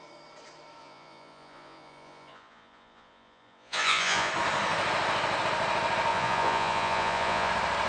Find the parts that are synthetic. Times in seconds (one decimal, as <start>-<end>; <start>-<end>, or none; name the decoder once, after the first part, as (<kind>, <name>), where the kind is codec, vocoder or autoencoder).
0.8-4.3 (vocoder, Vocos); 6.1-7.5